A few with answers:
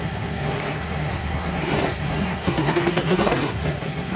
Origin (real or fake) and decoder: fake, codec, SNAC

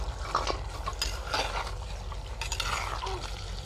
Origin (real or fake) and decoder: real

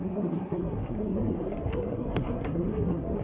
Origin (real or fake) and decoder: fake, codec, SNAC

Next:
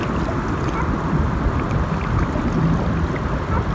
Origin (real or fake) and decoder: real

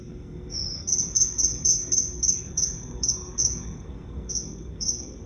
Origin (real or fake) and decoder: fake, codec, SNAC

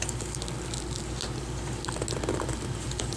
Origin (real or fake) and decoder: real